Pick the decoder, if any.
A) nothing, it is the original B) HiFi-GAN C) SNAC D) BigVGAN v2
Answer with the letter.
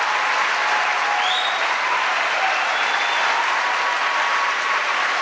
A